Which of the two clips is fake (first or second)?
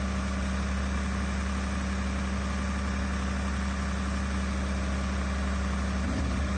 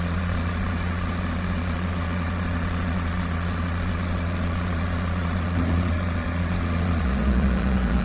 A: second